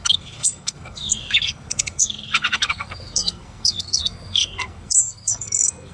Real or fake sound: fake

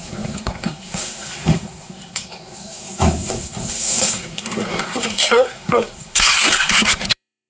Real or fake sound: fake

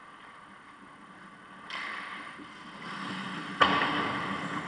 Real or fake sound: real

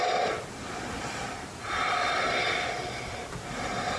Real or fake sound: real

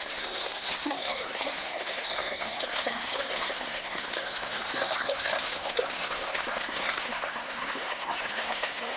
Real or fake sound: fake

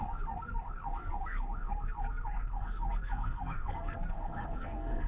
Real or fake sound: fake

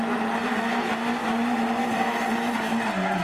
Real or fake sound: real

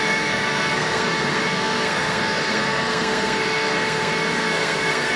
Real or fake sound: fake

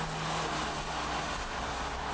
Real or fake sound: real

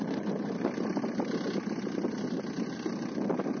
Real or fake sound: real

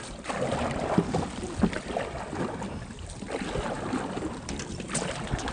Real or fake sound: real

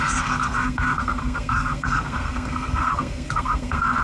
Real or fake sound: fake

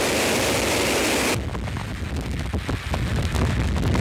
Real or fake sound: real